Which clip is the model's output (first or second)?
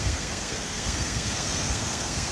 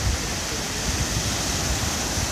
first